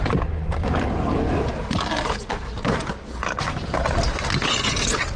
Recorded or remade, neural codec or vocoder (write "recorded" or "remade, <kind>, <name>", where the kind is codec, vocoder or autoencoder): recorded